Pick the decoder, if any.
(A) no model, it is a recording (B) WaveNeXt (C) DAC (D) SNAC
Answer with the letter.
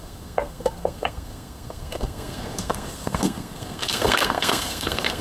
D